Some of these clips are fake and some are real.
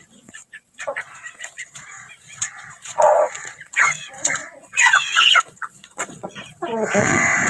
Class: fake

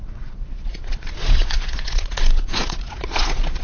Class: fake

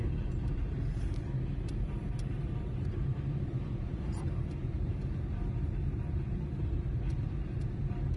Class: fake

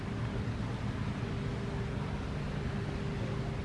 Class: real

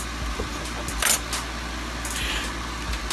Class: real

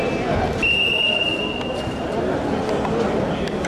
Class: real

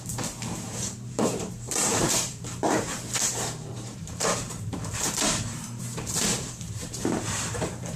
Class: fake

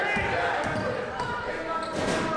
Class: real